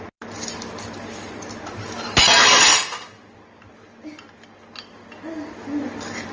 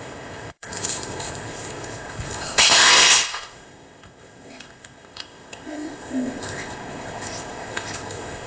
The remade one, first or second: second